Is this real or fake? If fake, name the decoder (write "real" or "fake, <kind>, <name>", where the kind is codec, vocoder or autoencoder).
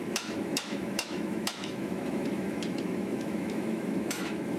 fake, autoencoder, DAC-VAE